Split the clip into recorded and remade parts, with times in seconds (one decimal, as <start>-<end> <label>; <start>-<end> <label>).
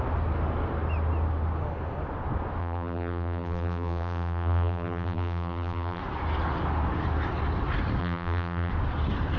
0.0-2.6 recorded; 2.6-6.0 remade; 6.0-8.0 recorded; 8.0-8.7 remade; 8.7-9.4 recorded